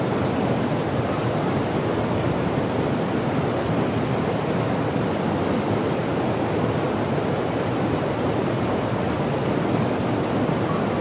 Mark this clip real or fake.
real